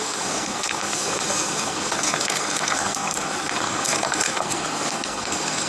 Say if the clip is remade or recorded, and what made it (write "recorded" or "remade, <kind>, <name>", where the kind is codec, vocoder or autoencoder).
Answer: remade, codec, SNAC